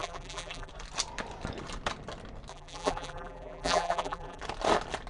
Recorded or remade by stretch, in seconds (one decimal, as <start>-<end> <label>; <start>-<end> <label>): 0.0-0.7 remade; 0.7-2.5 recorded; 2.5-4.4 remade; 4.4-5.1 recorded